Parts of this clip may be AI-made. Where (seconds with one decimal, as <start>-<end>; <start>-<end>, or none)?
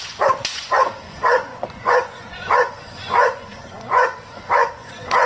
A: 0.0-5.3